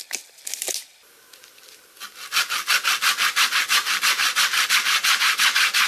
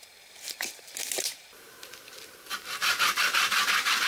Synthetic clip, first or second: second